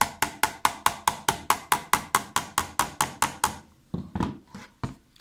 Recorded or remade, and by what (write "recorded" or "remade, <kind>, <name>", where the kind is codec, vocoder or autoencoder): recorded